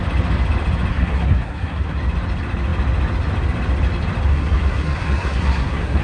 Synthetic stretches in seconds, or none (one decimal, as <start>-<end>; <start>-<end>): 0.9-2.0; 4.3-6.0